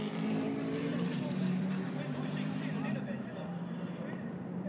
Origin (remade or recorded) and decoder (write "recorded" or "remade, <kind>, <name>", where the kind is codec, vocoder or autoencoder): remade, vocoder, BigVGAN v2